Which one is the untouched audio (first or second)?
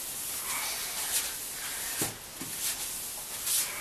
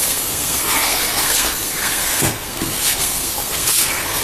first